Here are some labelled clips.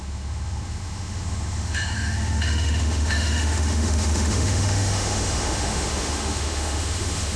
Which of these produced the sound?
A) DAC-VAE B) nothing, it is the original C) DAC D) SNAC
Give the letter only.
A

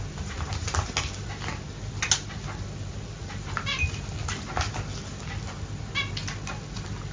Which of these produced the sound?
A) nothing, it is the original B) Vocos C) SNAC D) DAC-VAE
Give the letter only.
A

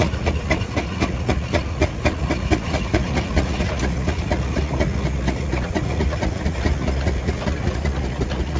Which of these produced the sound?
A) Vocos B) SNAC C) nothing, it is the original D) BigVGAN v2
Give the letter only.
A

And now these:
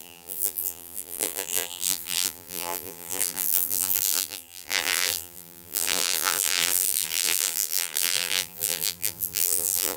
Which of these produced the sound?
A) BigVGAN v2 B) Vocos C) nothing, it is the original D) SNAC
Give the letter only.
A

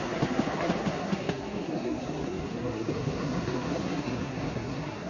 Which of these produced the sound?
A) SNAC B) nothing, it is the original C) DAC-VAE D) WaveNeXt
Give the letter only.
A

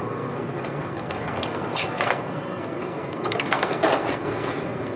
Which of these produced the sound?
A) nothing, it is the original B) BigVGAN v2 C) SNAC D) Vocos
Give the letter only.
C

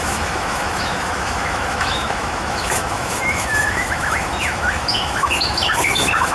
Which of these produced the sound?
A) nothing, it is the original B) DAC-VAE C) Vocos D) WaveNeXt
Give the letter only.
B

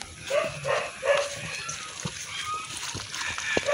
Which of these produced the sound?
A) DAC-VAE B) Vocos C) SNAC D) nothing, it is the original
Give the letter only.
D